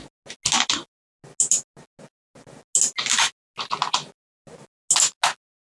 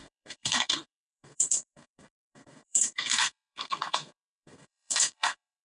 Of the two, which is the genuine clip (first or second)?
first